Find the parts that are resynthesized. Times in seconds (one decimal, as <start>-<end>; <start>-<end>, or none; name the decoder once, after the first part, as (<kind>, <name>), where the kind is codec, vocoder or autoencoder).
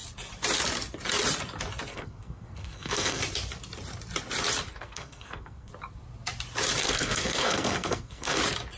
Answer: 1.9-3.2 (codec, SNAC); 4.7-5.7; 6.8-8.4